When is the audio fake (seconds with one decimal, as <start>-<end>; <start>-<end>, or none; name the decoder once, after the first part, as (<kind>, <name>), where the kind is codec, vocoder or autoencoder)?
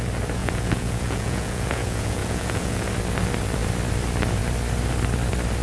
0.4-2.9 (vocoder, Vocos)